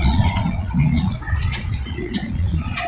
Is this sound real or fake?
fake